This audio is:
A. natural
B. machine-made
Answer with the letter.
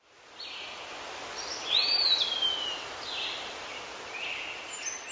A